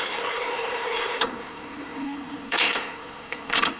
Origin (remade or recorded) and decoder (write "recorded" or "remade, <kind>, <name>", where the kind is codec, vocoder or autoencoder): remade, codec, SNAC